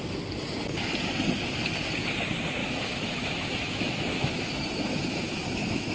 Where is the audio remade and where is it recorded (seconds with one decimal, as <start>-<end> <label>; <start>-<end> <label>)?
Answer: 0.0-2.6 recorded; 2.6-5.9 remade